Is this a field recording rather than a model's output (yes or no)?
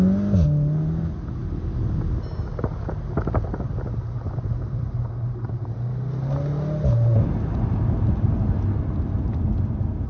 yes